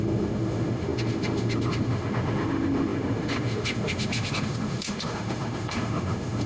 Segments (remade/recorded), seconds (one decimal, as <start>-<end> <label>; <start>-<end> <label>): 0.0-6.5 remade

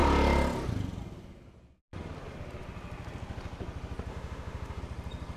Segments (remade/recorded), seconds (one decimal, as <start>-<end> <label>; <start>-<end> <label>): 0.0-4.1 recorded; 4.1-4.8 remade; 4.8-5.4 recorded

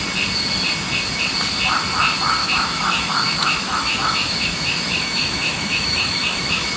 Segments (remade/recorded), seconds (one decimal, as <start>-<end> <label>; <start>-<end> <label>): 0.0-2.4 recorded; 2.4-6.8 remade

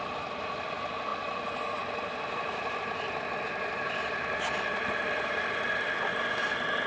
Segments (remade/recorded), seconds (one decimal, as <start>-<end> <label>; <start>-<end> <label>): 0.0-6.9 recorded

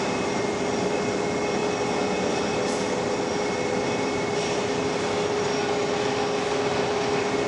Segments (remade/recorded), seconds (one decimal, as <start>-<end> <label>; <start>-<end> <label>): 0.0-7.5 recorded

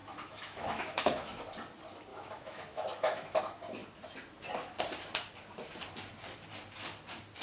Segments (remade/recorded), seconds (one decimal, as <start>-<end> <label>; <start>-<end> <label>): 0.0-1.4 remade; 1.4-2.1 recorded; 2.1-3.4 remade; 3.4-7.4 recorded

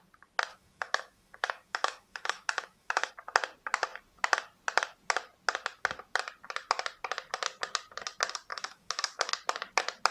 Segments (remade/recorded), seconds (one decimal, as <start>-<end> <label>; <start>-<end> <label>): 0.0-0.5 recorded; 0.5-3.1 remade; 3.1-8.5 recorded; 8.5-9.3 remade; 9.3-10.1 recorded

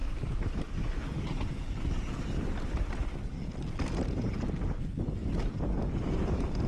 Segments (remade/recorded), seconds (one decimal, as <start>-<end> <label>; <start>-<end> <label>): 0.0-0.6 remade; 0.6-6.7 recorded